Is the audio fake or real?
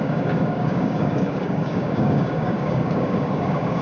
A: fake